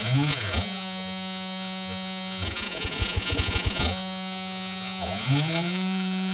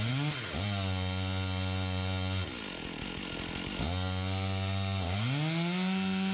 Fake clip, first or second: first